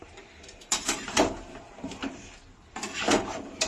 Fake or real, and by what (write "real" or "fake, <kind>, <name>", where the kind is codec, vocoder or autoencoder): fake, vocoder, BigVGAN v2